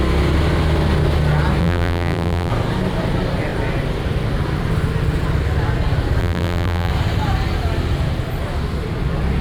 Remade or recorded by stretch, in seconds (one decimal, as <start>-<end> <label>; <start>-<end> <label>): 0.0-1.6 recorded; 1.6-2.5 remade; 2.5-6.2 recorded; 6.2-6.9 remade; 6.9-9.4 recorded

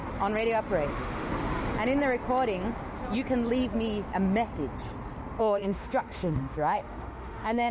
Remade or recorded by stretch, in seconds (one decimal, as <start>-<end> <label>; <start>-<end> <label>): 0.0-0.9 recorded; 0.9-1.3 remade; 1.3-5.4 recorded; 5.4-7.7 remade